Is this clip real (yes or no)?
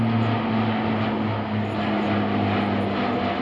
yes